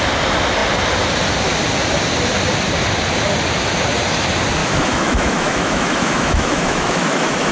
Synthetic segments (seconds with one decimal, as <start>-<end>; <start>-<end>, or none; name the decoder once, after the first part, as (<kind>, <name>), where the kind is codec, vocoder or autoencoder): 4.6-7.5 (autoencoder, DAC-VAE)